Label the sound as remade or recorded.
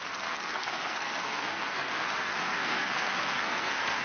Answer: remade